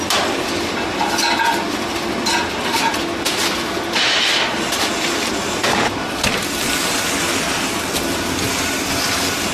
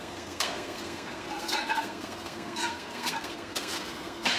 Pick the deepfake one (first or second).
second